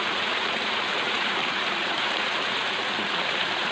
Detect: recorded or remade remade